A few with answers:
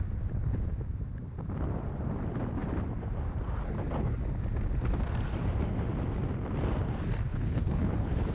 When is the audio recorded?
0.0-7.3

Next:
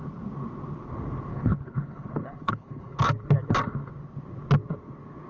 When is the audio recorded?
0.0-1.3; 3.0-5.3

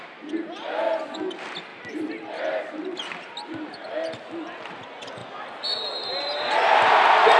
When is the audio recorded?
0.0-7.4

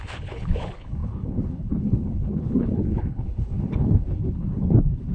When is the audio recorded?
none

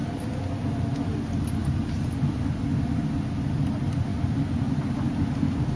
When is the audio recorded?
0.0-5.8

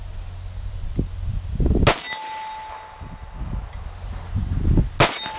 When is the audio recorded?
0.0-5.4

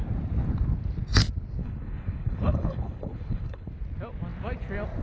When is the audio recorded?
0.0-1.6; 3.7-5.0